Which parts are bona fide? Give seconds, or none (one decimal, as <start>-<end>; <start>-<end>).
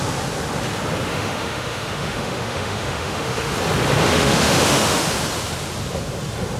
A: 0.0-1.1; 3.5-4.1; 5.1-6.6